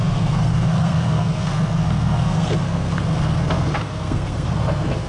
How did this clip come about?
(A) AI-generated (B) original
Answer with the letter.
A